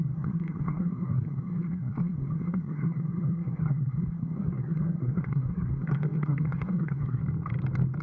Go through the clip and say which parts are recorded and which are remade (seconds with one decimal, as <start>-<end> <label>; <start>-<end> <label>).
0.0-7.2 remade; 7.2-8.0 recorded